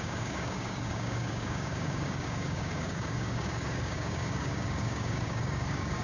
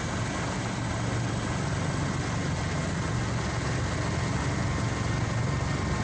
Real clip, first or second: second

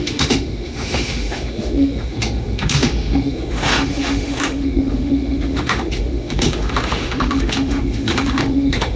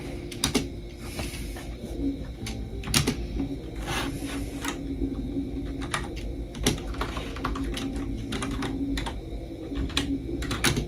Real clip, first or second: second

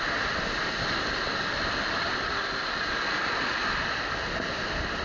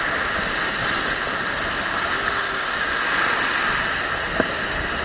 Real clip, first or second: second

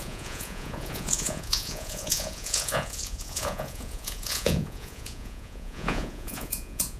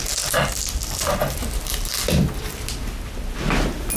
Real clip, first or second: second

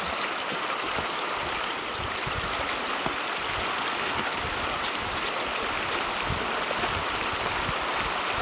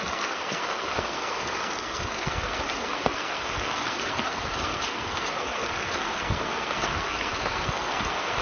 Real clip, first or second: first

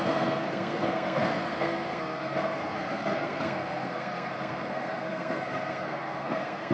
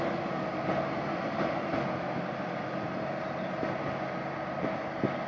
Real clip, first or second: second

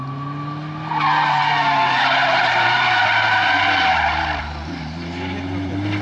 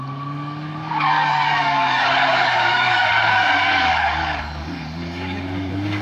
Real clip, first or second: first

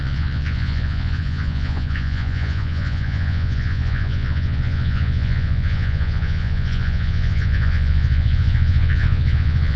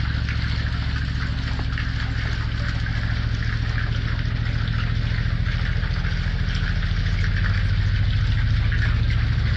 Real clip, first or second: second